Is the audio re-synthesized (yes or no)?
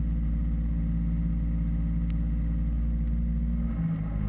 no